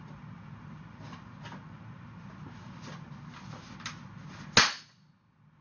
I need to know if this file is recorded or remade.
recorded